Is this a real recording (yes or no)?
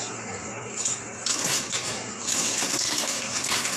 no